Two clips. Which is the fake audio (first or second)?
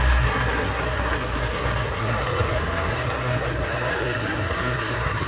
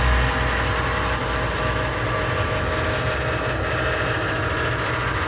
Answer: first